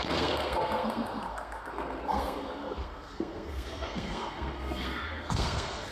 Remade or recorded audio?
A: remade